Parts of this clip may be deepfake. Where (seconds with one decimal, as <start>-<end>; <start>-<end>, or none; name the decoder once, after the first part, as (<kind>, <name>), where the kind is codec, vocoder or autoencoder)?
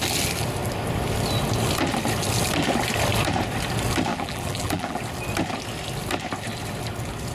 4.1-5.0 (vocoder, BigVGAN v2)